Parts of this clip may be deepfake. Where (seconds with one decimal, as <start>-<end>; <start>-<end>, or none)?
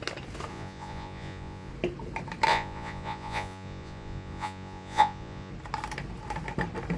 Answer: 0.5-1.7; 2.5-5.5